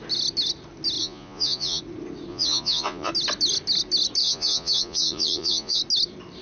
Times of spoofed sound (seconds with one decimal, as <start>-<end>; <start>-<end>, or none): 1.0-1.8; 2.3-3.1; 4.2-5.8